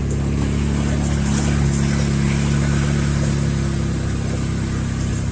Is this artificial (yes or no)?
no